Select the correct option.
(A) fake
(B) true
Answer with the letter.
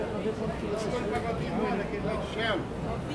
B